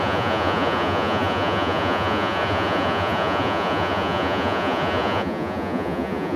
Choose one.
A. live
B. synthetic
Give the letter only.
B